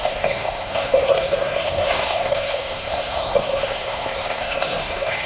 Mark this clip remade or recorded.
remade